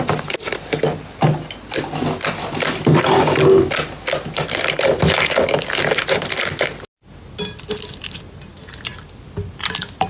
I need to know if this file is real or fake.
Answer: real